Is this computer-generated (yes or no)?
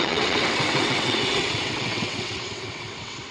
yes